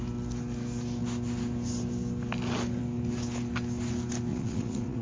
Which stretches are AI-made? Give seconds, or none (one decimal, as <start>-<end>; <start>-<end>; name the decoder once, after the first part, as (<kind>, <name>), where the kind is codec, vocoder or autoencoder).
4.3-5.0 (vocoder, Vocos)